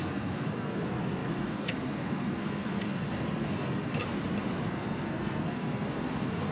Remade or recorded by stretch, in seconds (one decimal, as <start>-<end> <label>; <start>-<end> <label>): 0.0-4.0 remade; 4.0-4.7 recorded; 4.7-6.5 remade